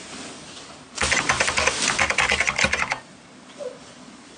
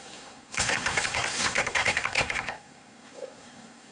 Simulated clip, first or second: second